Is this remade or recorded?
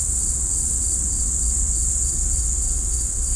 remade